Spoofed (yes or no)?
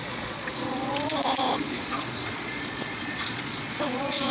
yes